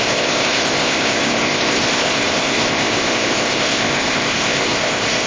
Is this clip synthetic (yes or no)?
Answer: yes